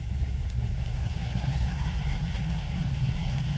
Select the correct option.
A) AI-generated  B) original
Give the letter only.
A